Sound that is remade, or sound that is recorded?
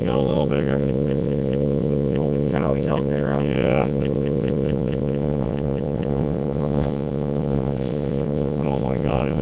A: remade